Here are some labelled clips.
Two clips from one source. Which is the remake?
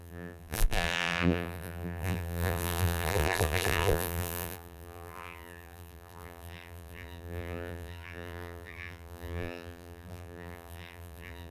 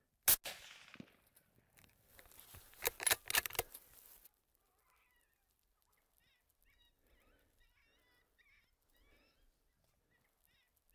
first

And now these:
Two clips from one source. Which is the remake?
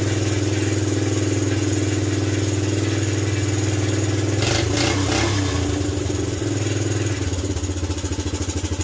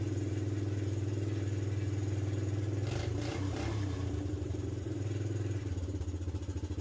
second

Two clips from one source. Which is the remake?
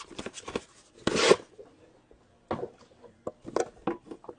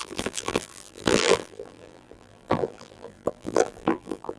second